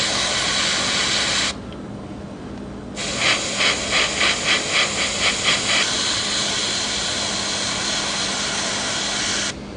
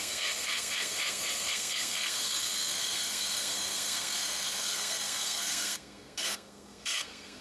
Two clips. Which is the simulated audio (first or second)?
second